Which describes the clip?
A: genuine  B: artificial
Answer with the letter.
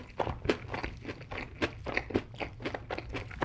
A